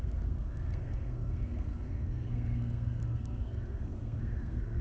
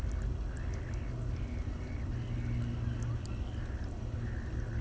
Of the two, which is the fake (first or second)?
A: first